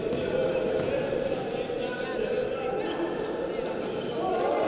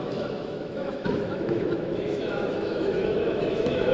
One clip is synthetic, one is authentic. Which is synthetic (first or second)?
second